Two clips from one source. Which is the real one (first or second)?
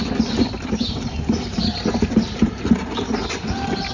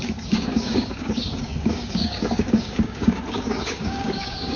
first